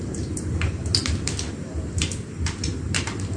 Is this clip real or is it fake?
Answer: real